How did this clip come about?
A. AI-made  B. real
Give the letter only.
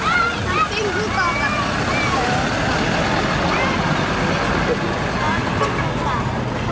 B